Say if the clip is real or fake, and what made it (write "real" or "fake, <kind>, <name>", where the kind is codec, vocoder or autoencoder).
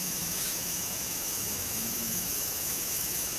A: fake, autoencoder, DAC-VAE